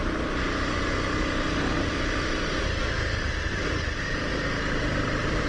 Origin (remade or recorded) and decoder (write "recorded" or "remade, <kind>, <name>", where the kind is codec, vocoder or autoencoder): recorded